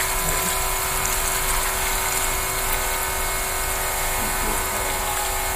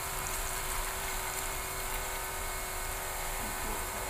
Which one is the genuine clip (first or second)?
first